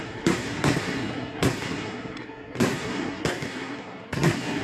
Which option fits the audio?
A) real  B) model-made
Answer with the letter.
B